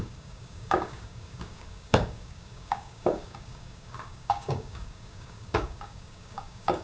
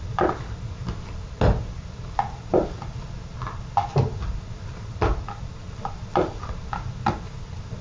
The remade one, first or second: first